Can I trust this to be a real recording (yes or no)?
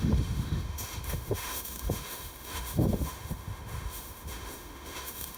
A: no